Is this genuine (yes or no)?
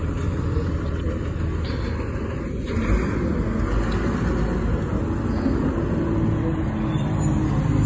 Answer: yes